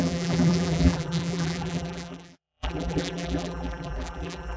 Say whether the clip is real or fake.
fake